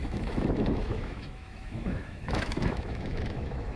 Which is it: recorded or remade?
remade